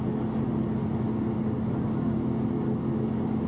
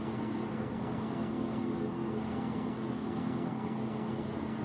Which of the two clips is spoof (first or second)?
second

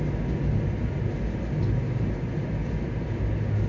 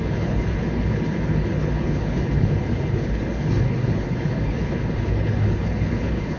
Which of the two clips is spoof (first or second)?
second